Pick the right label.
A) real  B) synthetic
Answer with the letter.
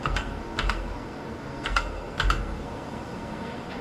B